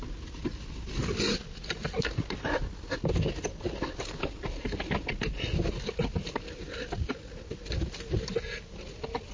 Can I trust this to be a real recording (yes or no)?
yes